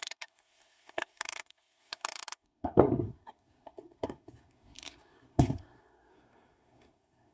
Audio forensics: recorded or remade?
remade